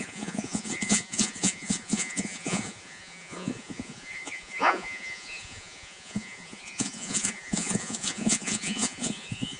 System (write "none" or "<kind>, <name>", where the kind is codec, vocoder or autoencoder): vocoder, Vocos